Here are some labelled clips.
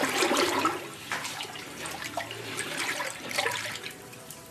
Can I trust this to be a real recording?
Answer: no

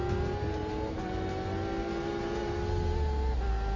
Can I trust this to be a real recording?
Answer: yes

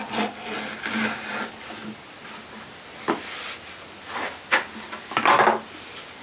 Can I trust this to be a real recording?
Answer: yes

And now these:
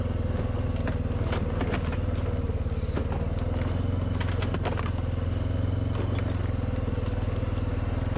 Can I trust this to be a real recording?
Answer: yes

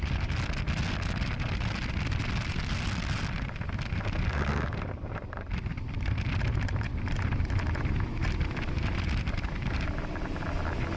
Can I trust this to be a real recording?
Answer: yes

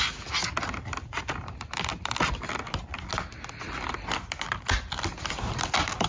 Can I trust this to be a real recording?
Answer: yes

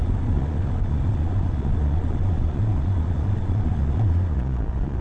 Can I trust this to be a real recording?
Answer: no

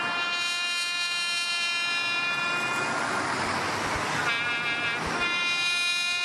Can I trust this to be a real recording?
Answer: yes